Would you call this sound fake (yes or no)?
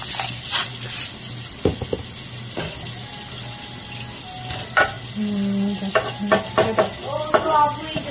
no